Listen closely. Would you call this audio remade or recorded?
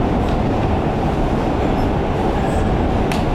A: recorded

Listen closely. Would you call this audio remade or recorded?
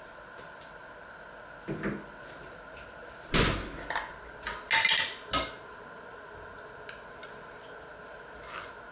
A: recorded